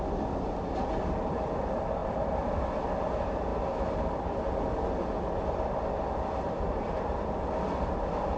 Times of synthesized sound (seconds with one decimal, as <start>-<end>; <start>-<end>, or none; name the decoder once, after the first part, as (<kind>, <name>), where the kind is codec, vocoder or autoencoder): 2.0-2.6 (vocoder, BigVGAN v2)